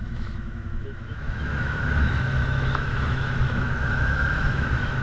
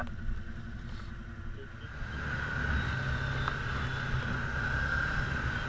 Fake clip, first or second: first